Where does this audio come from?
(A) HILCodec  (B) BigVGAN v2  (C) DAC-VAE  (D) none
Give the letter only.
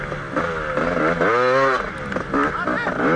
D